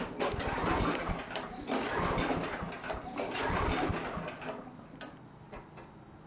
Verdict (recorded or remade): recorded